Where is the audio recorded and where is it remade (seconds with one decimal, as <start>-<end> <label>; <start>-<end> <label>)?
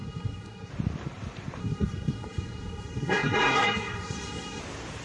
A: 0.0-0.7 remade; 0.7-1.6 recorded; 1.6-4.6 remade; 4.6-5.0 recorded